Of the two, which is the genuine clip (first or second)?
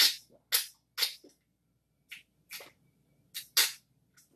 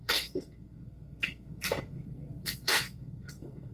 first